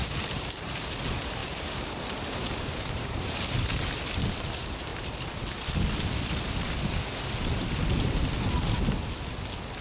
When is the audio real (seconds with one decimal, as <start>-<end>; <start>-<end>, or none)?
0.9-1.4; 3.4-9.8